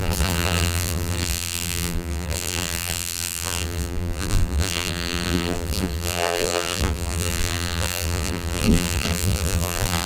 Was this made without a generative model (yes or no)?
no